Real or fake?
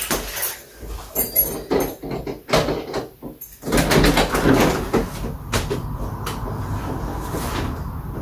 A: real